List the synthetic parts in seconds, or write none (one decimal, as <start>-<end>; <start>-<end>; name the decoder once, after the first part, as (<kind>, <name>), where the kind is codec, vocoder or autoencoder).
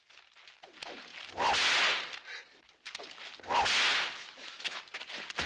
4.2-4.8 (autoencoder, DAC-VAE)